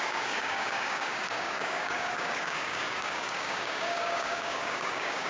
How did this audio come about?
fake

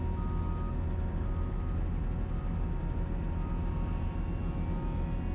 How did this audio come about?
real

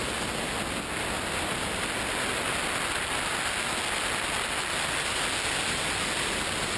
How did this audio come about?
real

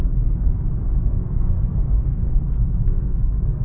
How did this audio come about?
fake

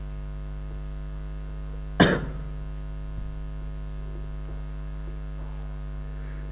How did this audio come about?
real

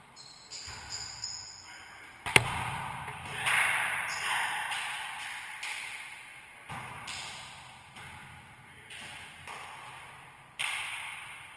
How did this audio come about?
real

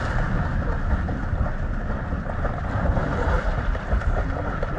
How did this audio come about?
real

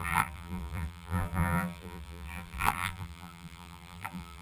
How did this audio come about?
fake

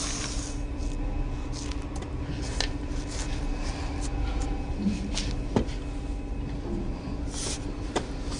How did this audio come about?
real